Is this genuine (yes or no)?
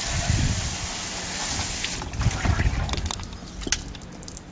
yes